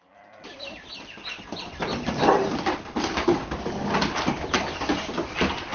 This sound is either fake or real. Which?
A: fake